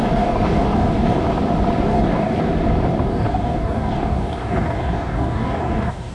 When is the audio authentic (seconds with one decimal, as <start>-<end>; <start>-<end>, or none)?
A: 1.2-1.9; 2.4-2.9